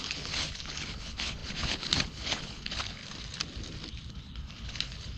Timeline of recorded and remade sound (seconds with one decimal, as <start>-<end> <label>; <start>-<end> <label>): 0.0-3.0 remade; 3.0-4.1 recorded; 4.1-5.2 remade